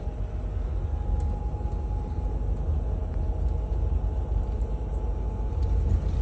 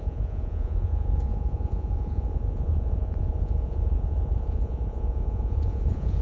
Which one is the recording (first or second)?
first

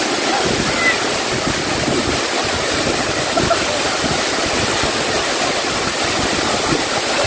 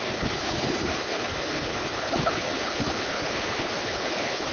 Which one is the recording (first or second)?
first